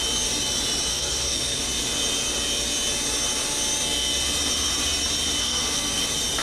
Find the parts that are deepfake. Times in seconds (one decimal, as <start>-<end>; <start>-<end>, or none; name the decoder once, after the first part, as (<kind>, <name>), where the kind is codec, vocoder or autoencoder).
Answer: 0.9-1.6 (codec, SNAC); 5.4-6.0